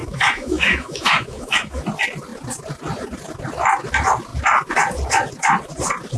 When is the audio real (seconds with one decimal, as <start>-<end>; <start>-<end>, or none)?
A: 1.8-6.2